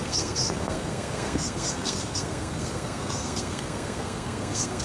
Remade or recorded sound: remade